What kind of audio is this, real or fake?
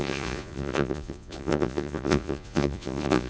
fake